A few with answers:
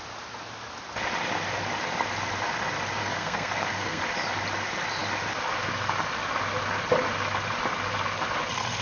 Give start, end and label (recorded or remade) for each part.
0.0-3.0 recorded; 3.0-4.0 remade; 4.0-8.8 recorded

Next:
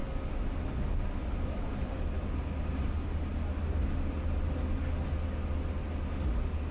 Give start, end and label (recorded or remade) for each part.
0.0-6.7 recorded

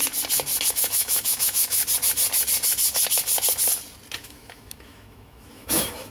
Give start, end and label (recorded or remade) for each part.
0.0-0.7 recorded; 0.7-1.8 remade; 1.8-4.2 recorded; 4.2-6.1 remade